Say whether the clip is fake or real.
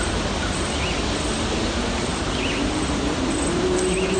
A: real